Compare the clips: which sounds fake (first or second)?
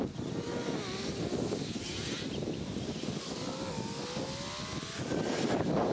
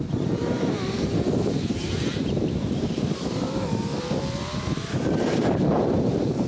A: second